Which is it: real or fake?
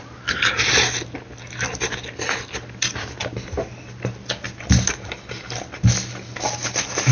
real